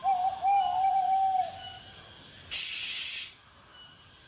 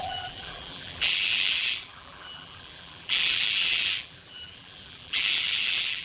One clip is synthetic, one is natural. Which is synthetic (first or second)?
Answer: second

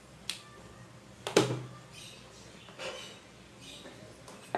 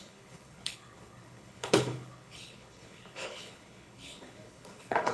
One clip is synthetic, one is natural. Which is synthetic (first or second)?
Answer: second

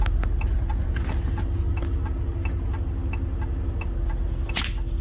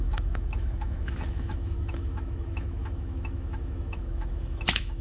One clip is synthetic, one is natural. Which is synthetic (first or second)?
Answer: second